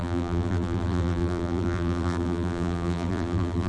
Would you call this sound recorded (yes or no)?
no